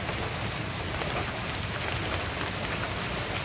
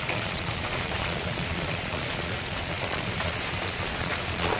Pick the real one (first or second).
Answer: first